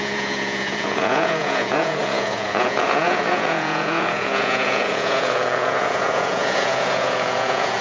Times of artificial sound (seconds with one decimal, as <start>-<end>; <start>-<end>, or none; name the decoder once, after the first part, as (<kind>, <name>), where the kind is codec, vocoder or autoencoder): 0.0-7.8 (vocoder, Vocos)